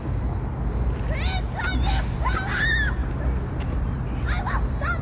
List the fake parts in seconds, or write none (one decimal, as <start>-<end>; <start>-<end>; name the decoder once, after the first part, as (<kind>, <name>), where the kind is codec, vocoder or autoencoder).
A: none